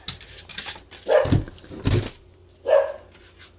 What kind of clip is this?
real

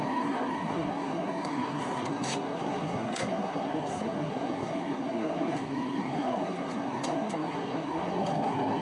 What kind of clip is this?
fake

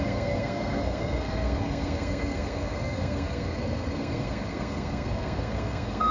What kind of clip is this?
fake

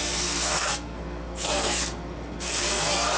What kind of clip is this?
fake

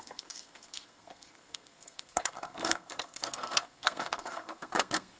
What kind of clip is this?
fake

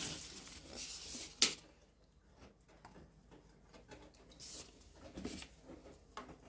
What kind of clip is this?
real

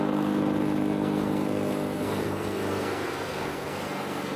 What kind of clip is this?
fake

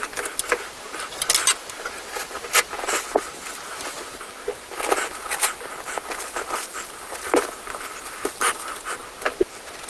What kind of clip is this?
real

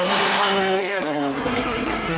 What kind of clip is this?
fake